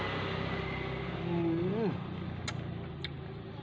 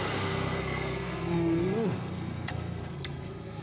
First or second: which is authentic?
first